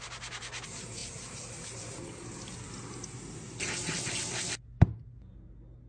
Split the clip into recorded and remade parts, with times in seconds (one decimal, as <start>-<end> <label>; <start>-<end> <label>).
0.0-5.9 recorded